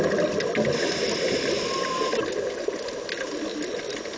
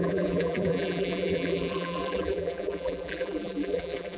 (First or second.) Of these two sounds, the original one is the first